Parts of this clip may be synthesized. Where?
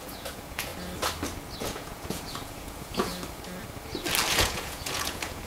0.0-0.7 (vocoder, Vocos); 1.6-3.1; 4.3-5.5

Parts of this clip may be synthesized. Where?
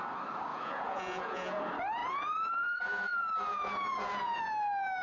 0.5-1.6 (vocoder, Vocos); 2.0-4.4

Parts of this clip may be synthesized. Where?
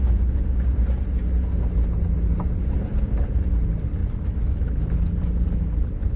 none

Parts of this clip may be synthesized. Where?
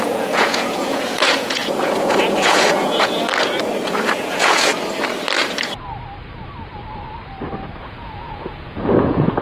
0.0-3.3 (vocoder, Vocos); 3.9-4.7; 7.8-9.4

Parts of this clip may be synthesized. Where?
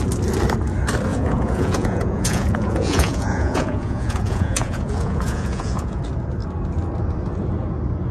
1.1-6.0 (vocoder, Vocos)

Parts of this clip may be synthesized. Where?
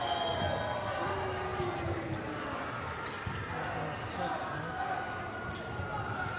none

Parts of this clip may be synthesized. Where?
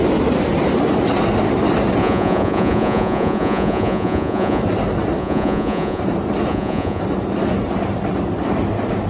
2.0-4.6 (vocoder, Vocos); 5.2-6.0; 6.5-7.0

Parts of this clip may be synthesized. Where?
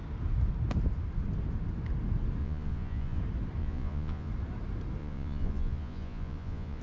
2.4-3.2 (vocoder, Vocos); 3.6-4.3; 5.0-6.8